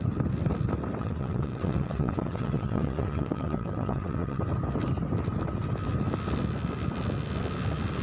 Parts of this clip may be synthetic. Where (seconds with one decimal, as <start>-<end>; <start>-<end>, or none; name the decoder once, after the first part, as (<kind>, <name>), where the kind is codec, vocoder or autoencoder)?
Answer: 1.0-4.4 (vocoder, WaveNeXt)

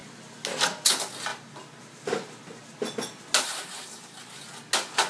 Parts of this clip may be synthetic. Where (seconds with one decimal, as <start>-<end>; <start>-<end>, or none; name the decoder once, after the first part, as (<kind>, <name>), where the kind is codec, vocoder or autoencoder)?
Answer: none

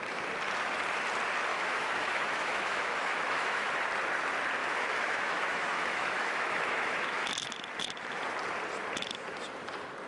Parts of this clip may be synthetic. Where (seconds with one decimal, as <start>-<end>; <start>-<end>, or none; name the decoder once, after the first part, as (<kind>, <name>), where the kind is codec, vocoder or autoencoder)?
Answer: 1.5-3.7 (autoencoder, DAC-VAE); 4.6-7.3

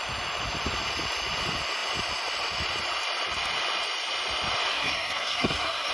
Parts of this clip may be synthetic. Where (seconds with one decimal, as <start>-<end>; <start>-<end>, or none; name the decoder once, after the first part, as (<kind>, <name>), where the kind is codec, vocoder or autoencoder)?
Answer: 4.7-5.9 (codec, SNAC)